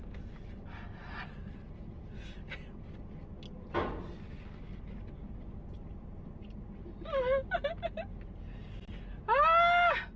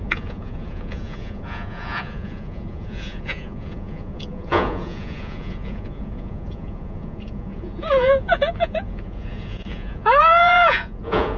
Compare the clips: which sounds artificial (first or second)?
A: second